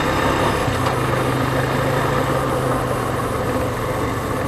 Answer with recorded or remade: recorded